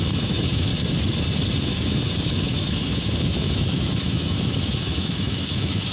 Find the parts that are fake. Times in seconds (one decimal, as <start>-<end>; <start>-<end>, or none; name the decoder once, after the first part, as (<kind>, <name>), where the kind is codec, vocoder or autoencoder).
0.0-0.7 (autoencoder, DAC-VAE); 1.6-5.9